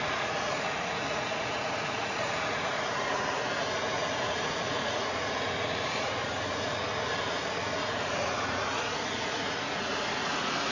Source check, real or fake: fake